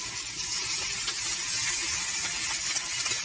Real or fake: real